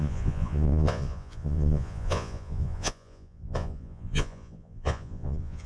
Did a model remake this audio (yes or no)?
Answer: yes